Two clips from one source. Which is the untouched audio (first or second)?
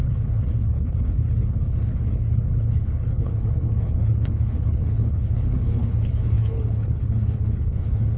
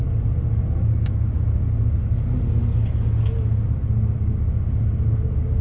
second